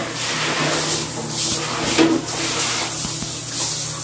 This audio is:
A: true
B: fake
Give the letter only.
A